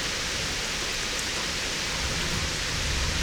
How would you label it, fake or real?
real